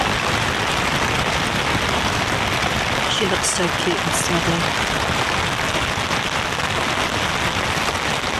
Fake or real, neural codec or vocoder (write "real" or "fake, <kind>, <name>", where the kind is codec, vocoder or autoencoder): real